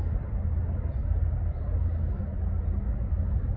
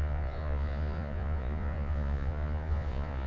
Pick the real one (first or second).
first